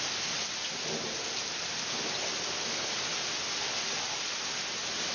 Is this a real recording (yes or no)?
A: yes